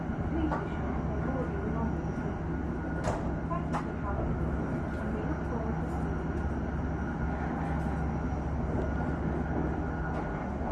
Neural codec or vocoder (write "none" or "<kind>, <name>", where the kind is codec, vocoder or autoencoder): none